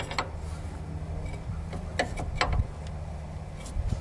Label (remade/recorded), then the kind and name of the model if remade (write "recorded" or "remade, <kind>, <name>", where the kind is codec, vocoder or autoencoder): recorded